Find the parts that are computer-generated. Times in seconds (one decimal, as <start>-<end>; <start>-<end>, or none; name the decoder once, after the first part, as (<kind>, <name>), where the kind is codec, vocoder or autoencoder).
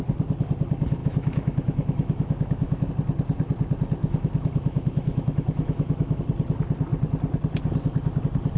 1.0-2.9 (autoencoder, DAC-VAE); 4.0-6.2